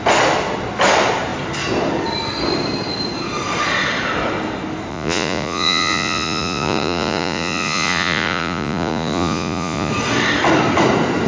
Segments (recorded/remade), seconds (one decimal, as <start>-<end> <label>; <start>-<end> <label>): 0.0-4.9 recorded; 4.9-9.9 remade; 9.9-11.3 recorded